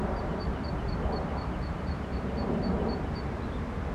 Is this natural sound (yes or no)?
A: no